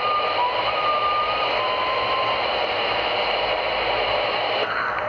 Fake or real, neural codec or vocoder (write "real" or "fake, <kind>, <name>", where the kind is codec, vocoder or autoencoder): real